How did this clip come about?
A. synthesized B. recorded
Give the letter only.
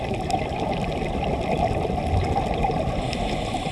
B